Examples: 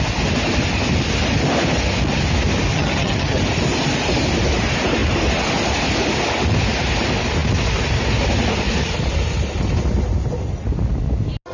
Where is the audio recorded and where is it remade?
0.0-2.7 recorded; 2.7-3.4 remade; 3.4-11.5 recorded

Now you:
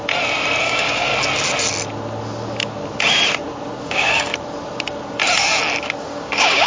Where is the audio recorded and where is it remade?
0.0-0.6 recorded; 0.6-1.1 remade; 1.1-3.8 recorded; 3.8-4.3 remade; 4.3-6.0 recorded; 6.0-6.7 remade